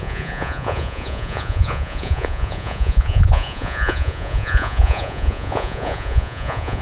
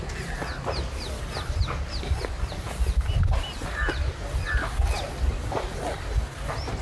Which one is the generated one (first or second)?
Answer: first